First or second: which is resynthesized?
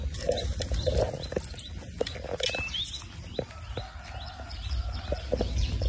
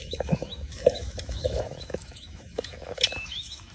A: second